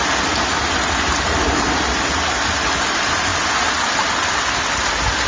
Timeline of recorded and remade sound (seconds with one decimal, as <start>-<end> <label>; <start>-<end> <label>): 0.0-5.3 recorded